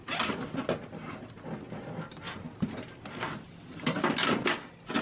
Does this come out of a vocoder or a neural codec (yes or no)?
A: no